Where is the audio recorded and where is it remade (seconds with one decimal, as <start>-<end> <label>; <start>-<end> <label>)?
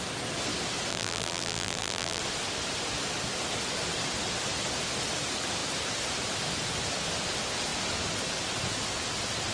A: 0.0-0.9 recorded; 0.9-2.2 remade; 2.2-9.5 recorded